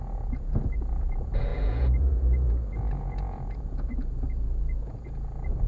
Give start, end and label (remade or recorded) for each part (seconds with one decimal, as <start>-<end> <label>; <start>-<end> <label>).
0.0-5.7 remade